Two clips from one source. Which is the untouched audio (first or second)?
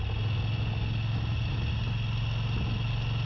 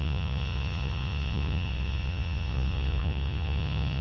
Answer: first